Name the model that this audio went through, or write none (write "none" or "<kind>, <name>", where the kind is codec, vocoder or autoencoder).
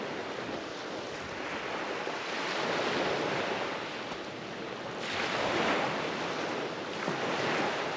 none